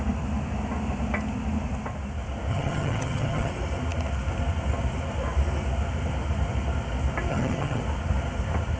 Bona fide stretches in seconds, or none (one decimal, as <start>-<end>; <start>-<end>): 0.0-2.5; 3.5-7.3; 7.8-8.8